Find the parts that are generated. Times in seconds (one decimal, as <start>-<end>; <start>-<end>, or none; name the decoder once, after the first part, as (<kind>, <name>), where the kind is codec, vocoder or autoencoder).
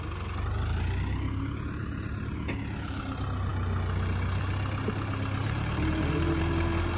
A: 5.4-6.4 (vocoder, BigVGAN v2)